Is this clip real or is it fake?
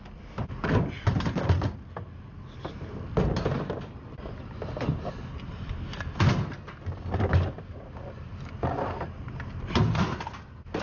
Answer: real